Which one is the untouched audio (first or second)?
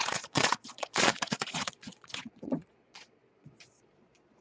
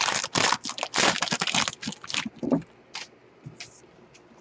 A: second